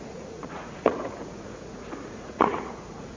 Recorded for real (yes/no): no